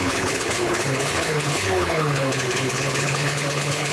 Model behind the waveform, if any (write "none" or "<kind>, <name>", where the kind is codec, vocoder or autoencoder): codec, HILCodec